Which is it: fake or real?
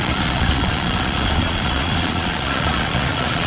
fake